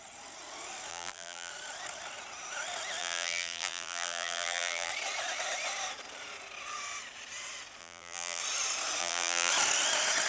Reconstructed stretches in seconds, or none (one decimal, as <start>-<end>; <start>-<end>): 0.9-1.5; 3.0-4.9; 7.8-8.4; 9.0-9.5